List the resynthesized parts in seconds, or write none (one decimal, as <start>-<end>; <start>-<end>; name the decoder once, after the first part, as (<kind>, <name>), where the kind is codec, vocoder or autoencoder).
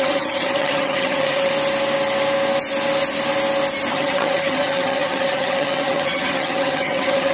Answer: 0.0-1.5 (vocoder, HiFi-GAN); 3.9-7.3